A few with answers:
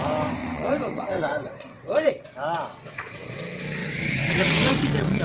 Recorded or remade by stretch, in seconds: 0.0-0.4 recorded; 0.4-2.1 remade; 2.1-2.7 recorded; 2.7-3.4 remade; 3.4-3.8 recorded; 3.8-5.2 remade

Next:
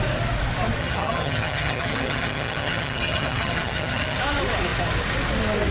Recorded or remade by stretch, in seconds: 0.0-0.8 recorded; 0.8-4.2 remade; 4.2-5.7 recorded

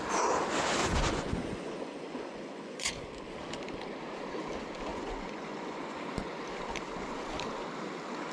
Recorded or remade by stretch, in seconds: 0.0-0.8 recorded; 0.8-3.1 remade; 3.1-4.9 recorded; 4.9-6.4 remade; 6.4-8.3 recorded